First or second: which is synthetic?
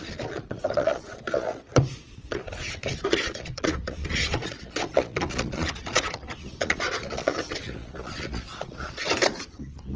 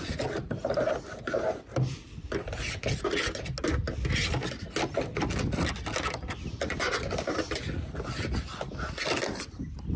first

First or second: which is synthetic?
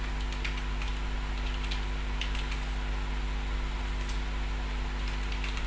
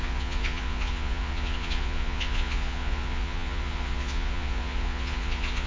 second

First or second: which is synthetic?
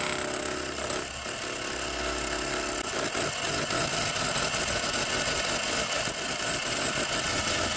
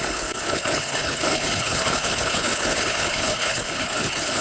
second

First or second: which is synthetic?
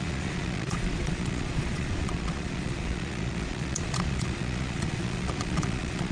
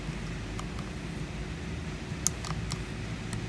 first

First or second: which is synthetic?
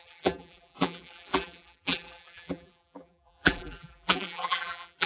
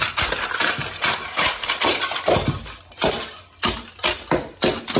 first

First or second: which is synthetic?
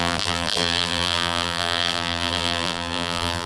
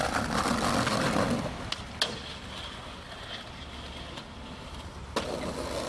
first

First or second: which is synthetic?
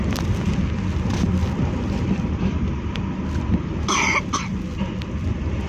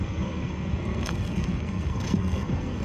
second